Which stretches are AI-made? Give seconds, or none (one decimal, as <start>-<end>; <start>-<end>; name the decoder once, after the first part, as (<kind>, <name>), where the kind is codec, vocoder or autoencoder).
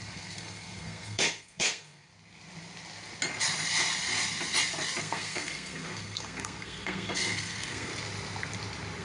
0.0-2.1 (codec, SNAC); 5.0-7.9